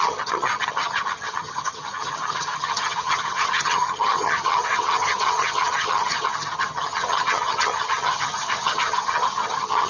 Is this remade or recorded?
remade